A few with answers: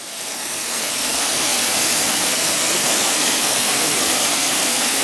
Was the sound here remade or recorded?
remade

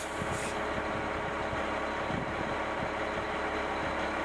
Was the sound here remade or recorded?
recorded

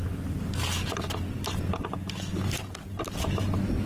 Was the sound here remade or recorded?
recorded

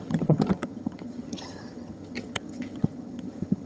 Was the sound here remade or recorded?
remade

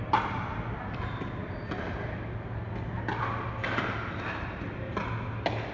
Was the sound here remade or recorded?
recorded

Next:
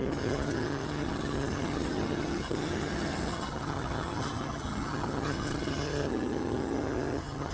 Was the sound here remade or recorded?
remade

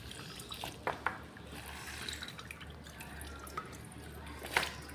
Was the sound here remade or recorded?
recorded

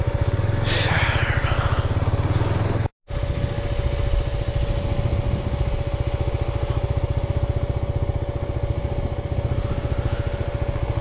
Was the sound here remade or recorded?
recorded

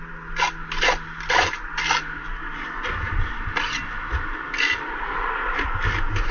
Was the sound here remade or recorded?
recorded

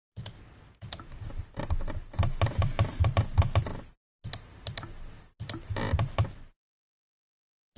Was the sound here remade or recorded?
recorded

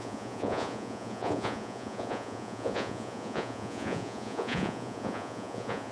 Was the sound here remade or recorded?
remade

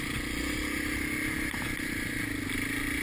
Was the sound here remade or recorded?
recorded